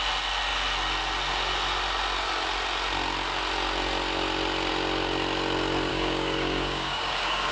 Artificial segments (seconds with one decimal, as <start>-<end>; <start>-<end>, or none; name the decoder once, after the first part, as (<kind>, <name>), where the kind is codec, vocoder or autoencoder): 5.9-7.5 (codec, DAC)